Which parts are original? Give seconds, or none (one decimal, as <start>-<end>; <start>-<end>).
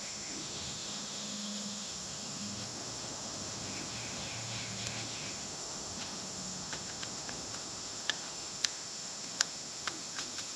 none